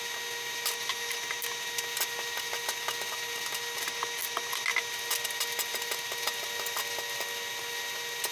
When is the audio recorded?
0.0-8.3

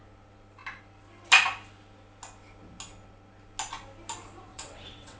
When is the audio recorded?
0.0-4.5

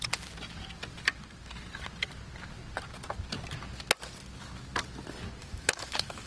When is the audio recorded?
0.0-5.4

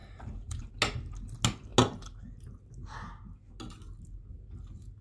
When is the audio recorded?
0.7-5.0

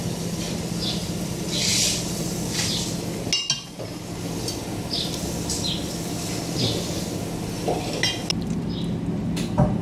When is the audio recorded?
0.0-9.8